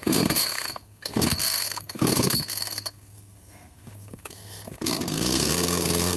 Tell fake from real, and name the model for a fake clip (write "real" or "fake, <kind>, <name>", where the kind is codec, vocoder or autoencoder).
fake, codec, SNAC